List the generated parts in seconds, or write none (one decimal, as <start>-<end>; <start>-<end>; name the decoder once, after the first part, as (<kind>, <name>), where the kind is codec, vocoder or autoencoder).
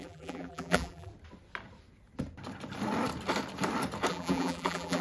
0.0-1.1 (vocoder, BigVGAN v2); 4.1-5.0